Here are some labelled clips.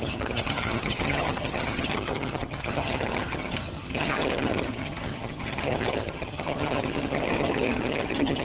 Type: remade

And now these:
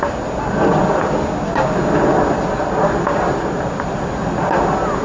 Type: recorded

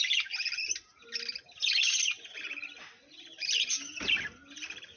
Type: recorded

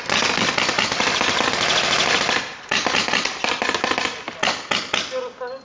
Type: recorded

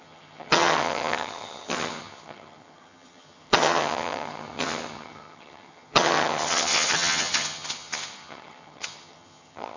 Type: remade